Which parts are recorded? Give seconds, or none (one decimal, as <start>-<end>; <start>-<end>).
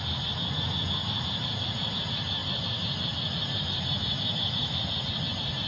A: 0.0-1.0; 1.9-2.4; 5.2-5.7